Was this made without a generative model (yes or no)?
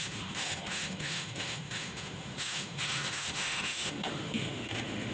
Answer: no